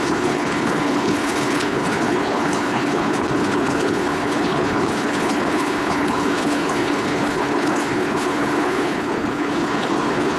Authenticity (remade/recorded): remade